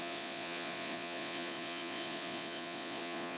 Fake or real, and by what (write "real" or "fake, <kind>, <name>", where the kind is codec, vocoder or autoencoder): fake, vocoder, Vocos